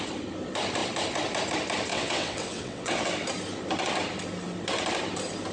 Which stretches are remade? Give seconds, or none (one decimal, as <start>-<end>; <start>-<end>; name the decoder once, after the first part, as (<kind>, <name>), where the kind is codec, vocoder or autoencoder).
1.9-3.1 (vocoder, WaveNeXt)